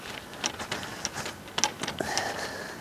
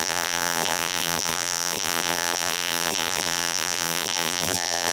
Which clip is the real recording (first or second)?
first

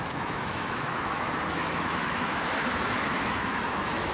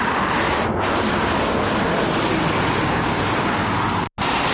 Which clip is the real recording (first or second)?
second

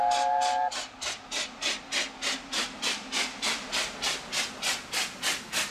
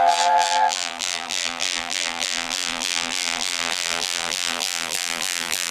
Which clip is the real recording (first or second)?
first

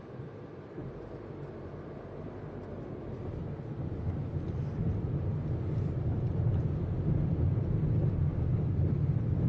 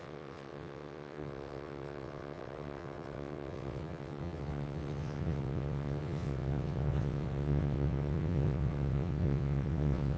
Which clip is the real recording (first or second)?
first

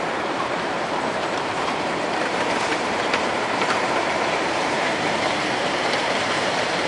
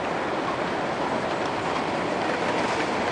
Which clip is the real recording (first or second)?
second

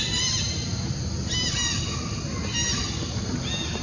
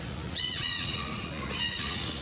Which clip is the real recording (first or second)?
first